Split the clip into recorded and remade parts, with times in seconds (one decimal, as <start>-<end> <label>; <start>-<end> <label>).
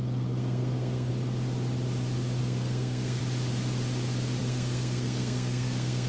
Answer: 0.0-1.1 remade; 1.1-2.4 recorded; 2.4-3.2 remade; 3.2-4.4 recorded; 4.4-6.1 remade